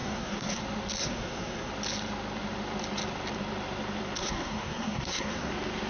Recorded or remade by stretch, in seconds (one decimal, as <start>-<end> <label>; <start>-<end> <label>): 0.0-0.6 remade; 0.6-1.0 recorded; 1.0-1.7 remade; 1.7-4.2 recorded; 4.2-5.5 remade; 5.5-5.9 recorded